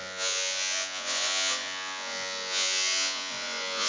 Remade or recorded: remade